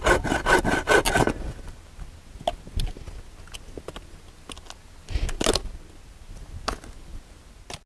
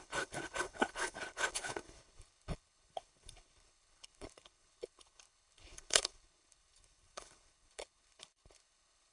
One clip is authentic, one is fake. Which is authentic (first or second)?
first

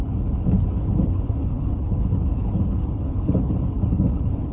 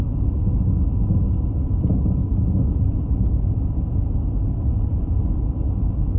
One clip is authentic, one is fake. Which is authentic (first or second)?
second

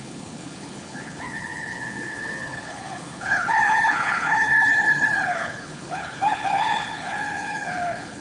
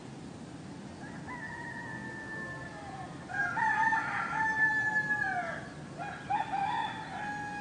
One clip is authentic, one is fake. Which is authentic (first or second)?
second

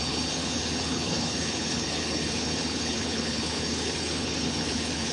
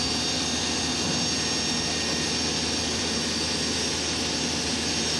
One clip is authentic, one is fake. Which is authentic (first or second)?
second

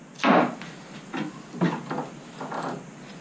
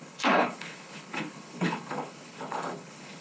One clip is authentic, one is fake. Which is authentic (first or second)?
first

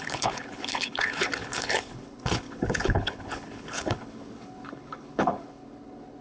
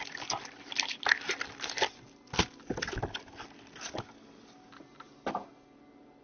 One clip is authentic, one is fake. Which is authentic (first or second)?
second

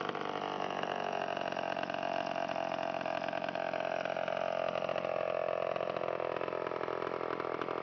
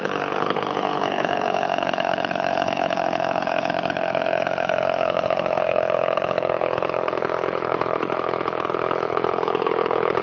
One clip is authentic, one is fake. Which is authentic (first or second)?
first